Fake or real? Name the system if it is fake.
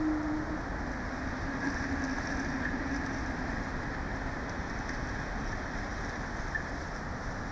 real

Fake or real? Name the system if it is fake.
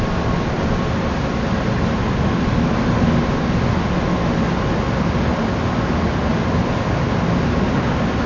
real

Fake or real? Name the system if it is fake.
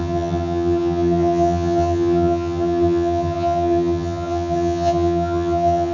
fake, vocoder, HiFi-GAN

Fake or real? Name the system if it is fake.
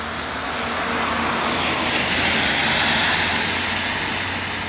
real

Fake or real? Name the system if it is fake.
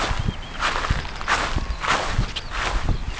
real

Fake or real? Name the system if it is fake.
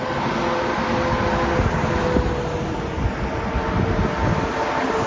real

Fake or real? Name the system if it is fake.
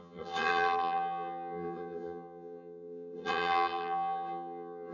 fake, vocoder, HiFi-GAN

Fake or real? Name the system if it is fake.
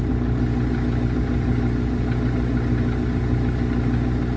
real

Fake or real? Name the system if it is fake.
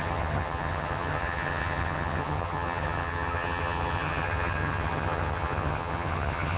fake, vocoder, HiFi-GAN